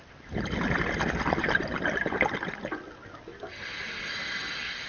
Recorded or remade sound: recorded